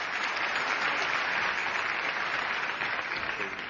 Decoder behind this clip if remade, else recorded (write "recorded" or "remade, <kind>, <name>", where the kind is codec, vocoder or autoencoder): recorded